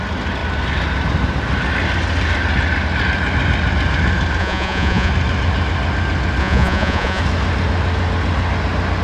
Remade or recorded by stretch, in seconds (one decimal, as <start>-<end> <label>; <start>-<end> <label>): 0.0-4.4 recorded; 4.4-5.1 remade; 5.1-6.4 recorded; 6.4-7.2 remade; 7.2-9.0 recorded